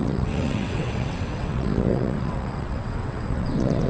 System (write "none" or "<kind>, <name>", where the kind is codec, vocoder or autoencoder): vocoder, WaveNeXt